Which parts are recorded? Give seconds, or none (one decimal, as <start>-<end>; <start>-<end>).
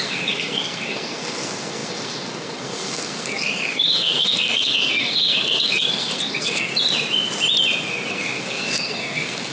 6.7-8.1